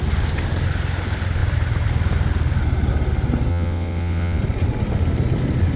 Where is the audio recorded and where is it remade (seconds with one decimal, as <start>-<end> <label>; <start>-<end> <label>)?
0.0-3.5 recorded; 3.5-4.4 remade; 4.4-5.8 recorded